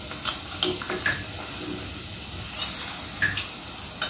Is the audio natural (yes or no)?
yes